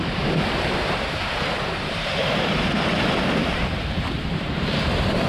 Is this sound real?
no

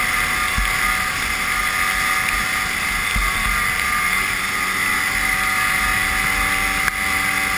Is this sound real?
yes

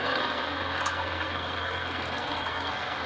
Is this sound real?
no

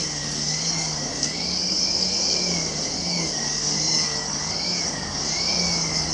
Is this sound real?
no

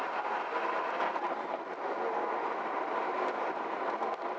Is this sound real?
yes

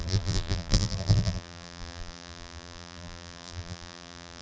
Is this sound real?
no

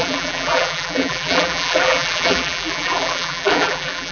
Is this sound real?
no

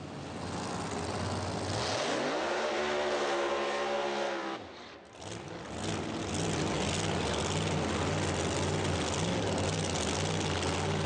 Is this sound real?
yes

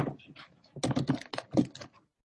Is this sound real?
yes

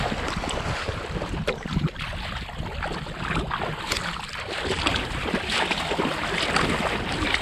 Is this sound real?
yes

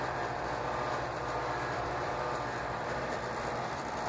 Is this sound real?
no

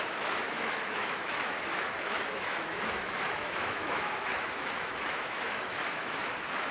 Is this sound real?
no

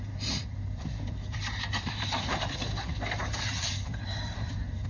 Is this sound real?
no